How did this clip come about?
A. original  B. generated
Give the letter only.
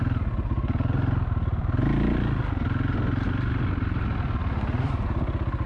A